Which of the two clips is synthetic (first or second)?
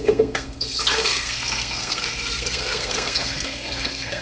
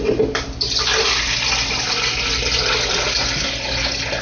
first